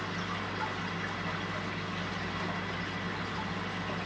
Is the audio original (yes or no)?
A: yes